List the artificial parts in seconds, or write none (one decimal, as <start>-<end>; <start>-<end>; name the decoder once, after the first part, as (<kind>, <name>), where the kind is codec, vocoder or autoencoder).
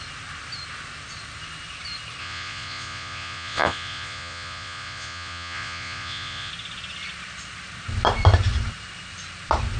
2.2-6.5 (vocoder, Vocos)